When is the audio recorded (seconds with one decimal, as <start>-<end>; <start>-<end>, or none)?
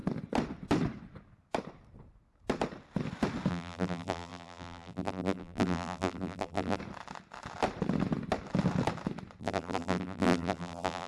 0.0-3.5; 6.8-9.4